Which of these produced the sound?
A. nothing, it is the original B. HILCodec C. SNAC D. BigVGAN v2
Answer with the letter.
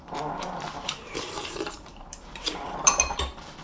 D